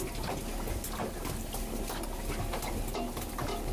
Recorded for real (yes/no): yes